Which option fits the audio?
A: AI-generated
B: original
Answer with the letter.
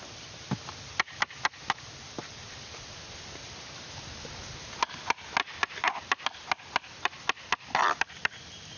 B